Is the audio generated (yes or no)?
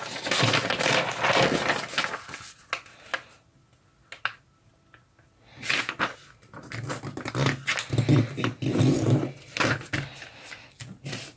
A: no